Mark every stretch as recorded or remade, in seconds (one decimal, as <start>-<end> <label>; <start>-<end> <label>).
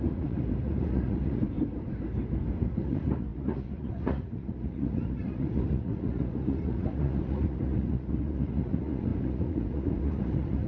0.0-1.4 remade; 1.4-2.6 recorded; 2.6-10.7 remade